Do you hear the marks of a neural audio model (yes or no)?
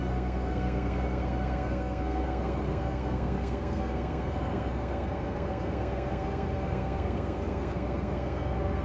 yes